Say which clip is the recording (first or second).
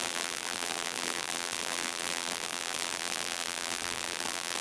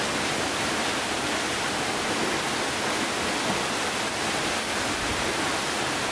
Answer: second